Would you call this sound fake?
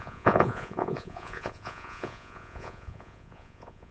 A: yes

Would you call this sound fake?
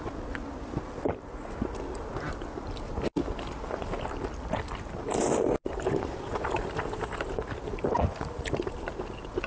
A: no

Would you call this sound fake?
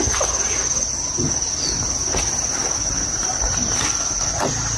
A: no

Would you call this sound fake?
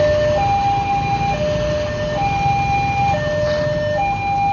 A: no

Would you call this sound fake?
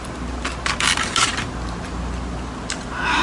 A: no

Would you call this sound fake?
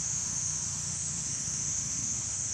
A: yes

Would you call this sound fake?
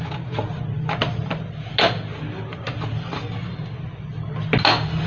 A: no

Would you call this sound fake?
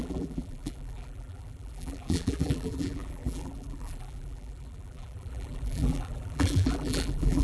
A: yes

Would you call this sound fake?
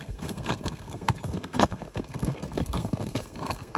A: yes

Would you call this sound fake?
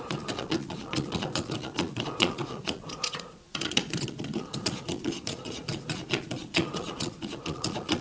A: yes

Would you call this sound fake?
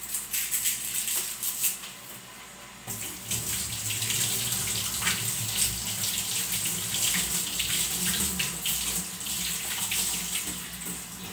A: no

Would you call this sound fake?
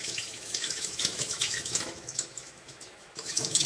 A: yes